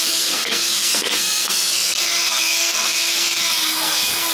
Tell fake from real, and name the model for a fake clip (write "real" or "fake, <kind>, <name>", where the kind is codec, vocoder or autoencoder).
fake, codec, SNAC